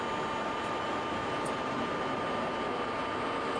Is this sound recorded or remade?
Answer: recorded